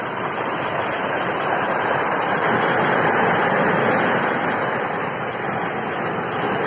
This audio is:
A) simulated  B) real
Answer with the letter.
B